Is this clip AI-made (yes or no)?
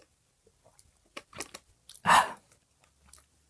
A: no